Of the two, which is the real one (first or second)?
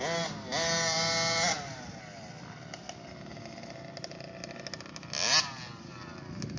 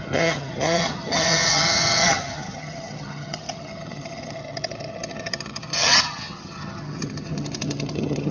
first